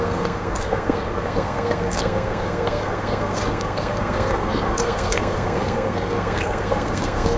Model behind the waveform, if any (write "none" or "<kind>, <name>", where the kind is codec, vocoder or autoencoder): codec, SNAC